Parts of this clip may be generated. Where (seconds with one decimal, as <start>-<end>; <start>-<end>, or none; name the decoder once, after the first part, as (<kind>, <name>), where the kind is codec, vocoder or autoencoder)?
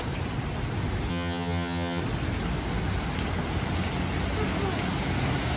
1.1-2.0 (vocoder, HiFi-GAN)